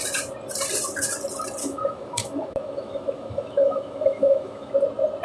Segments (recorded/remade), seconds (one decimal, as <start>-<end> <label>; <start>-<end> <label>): 0.0-1.6 recorded; 1.6-4.7 remade; 4.7-5.2 recorded